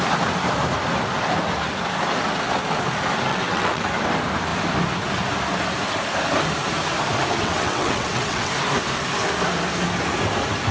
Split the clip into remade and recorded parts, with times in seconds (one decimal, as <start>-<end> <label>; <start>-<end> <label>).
0.0-3.3 recorded; 3.3-3.8 remade; 3.8-7.4 recorded; 7.4-8.5 remade; 8.5-10.7 recorded